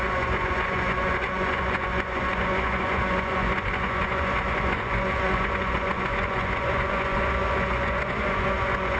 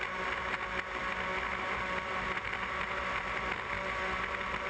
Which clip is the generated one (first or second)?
first